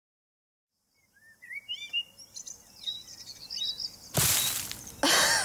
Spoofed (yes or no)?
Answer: no